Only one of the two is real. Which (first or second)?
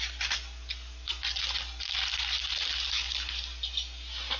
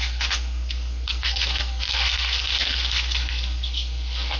first